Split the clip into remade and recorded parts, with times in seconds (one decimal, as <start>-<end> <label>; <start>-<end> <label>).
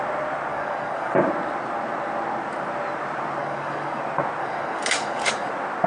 0.0-0.5 recorded; 0.5-1.1 remade; 1.1-3.4 recorded; 3.4-4.0 remade; 4.0-4.4 recorded; 4.4-5.5 remade; 5.5-5.9 recorded